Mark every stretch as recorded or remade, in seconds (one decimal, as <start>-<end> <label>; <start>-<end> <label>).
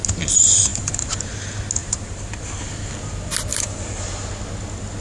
0.0-0.7 recorded; 0.7-1.3 remade; 1.3-1.8 recorded; 1.8-2.6 remade; 2.6-3.5 recorded; 3.5-4.3 remade; 4.3-5.0 recorded